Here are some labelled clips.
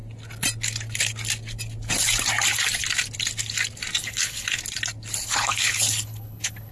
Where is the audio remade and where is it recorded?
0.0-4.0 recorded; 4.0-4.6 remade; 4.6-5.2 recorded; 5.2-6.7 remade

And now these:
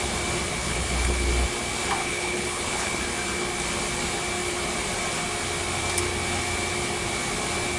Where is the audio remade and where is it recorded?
0.0-0.6 recorded; 0.6-1.3 remade; 1.3-2.0 recorded; 2.0-3.0 remade; 3.0-7.8 recorded